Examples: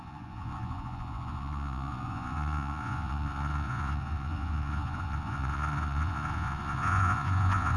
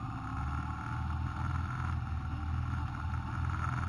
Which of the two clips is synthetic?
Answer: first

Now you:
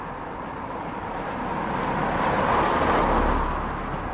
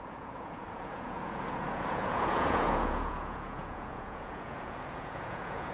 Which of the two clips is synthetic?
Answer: second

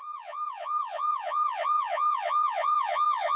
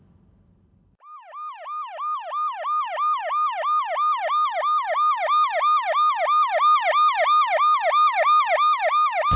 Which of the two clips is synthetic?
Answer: first